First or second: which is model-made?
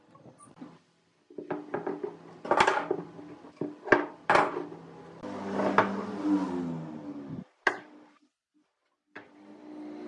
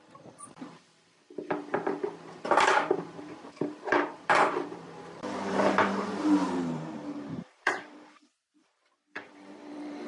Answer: second